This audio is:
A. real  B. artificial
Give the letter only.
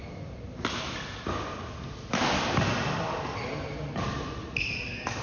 A